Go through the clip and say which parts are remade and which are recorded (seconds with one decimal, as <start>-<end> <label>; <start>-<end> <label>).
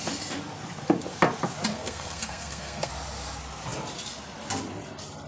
0.0-1.7 recorded; 1.7-2.9 remade; 2.9-5.3 recorded